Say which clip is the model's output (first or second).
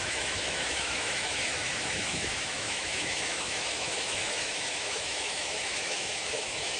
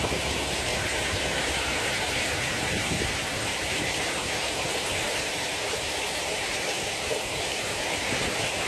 first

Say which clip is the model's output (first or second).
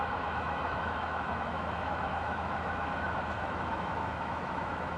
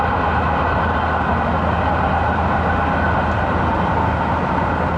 first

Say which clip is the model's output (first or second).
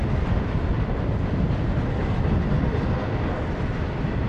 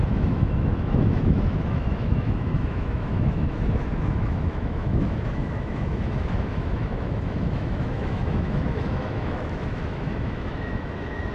second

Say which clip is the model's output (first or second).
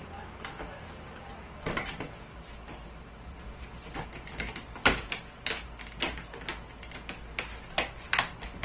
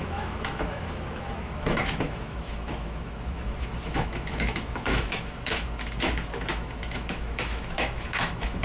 second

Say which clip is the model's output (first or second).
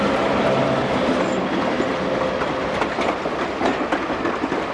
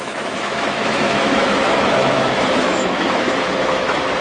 second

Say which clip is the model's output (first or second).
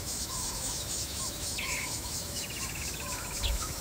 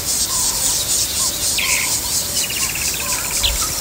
first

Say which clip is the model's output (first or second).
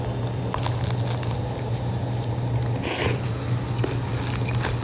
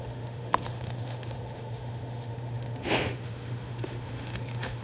second